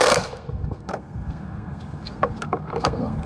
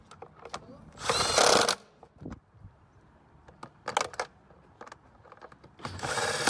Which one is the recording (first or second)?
second